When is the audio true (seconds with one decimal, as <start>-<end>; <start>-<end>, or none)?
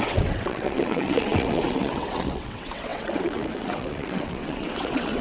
none